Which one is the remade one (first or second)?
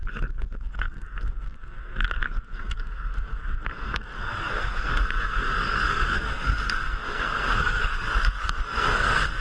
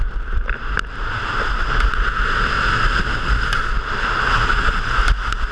first